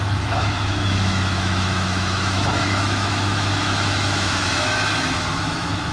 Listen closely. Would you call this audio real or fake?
fake